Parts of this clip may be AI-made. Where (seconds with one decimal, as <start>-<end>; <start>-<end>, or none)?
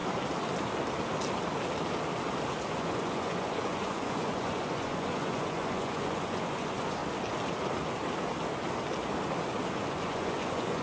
2.7-7.0; 9.7-10.8